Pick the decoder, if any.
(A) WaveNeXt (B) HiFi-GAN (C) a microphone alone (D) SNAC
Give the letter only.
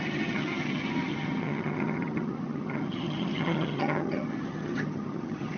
B